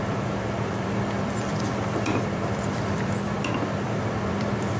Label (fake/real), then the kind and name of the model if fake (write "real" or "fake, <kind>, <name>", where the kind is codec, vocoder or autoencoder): fake, vocoder, BigVGAN v2